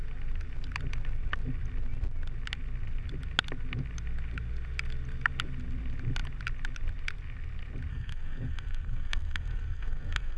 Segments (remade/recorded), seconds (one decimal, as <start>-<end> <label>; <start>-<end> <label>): 0.0-7.9 recorded; 7.9-10.4 remade